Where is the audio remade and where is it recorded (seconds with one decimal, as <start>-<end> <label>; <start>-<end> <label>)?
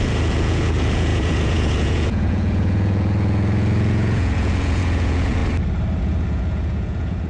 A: 0.0-5.4 remade; 5.4-6.0 recorded; 6.0-7.3 remade